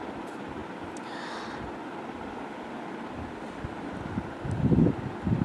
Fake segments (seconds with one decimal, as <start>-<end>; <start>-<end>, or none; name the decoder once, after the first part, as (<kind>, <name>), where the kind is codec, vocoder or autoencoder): 0.6-2.7 (vocoder, BigVGAN v2)